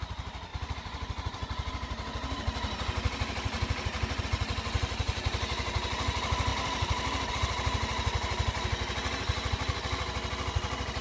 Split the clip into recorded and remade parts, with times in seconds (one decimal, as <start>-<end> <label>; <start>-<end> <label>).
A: 0.0-0.5 recorded; 0.5-4.2 remade; 4.2-6.5 recorded; 6.5-7.3 remade; 7.3-11.0 recorded